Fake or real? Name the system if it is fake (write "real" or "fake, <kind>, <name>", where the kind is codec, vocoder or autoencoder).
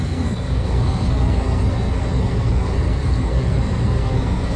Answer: fake, codec, SNAC